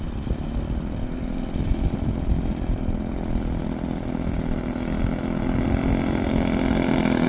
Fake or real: real